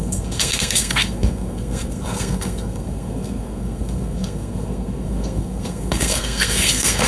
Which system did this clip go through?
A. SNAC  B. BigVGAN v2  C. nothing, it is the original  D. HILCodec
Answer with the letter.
A